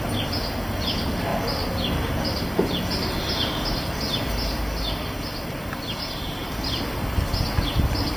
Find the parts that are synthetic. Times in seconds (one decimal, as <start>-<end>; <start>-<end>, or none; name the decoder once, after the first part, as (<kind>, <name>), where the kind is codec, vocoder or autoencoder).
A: none